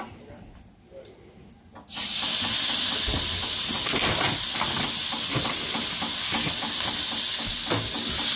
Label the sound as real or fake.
real